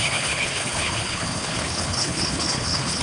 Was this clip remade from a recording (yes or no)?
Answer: yes